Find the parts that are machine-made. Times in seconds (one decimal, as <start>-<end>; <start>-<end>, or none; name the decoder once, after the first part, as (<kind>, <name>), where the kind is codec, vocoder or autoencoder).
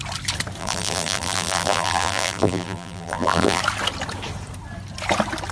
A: 0.6-3.6 (vocoder, BigVGAN v2)